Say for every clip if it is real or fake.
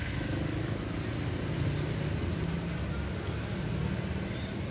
real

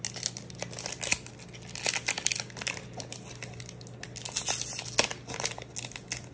real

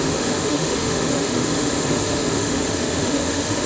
fake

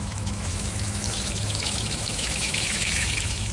fake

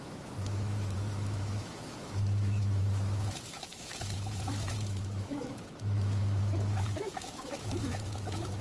fake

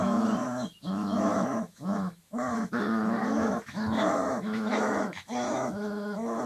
fake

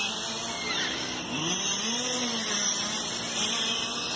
real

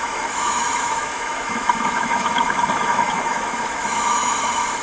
fake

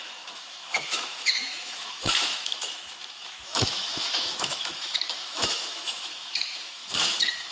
fake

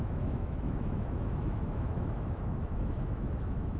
fake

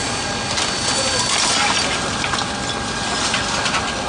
real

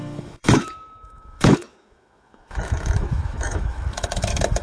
fake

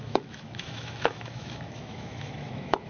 fake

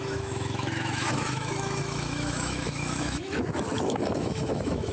fake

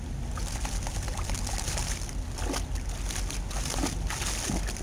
real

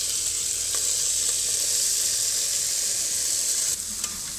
real